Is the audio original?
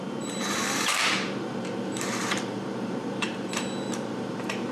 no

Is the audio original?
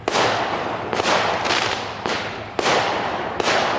no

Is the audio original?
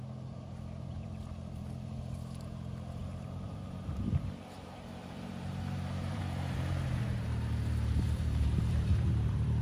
no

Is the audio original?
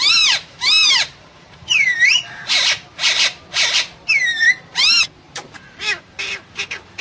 no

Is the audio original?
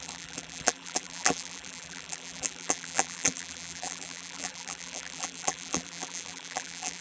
no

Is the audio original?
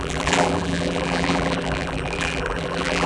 no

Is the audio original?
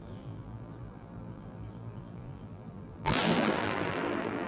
no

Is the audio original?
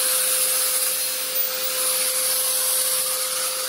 yes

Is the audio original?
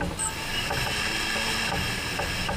yes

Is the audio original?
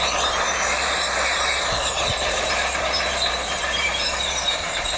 no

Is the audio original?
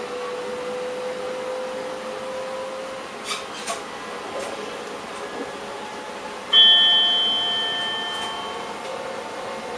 yes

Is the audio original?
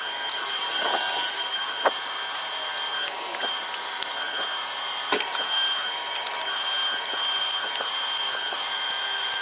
yes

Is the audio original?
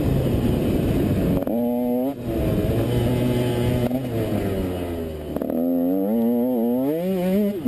yes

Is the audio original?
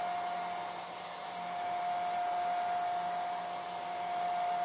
yes